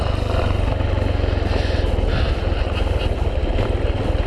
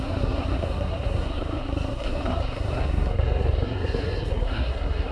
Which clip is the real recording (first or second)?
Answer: first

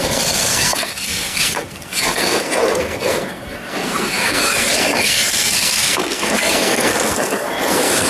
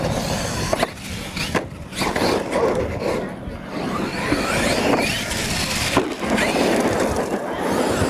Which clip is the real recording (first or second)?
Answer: second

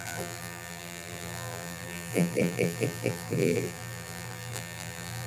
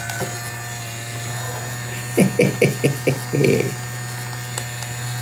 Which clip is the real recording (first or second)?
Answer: second